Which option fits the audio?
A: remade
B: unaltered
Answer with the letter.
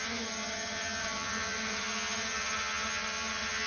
A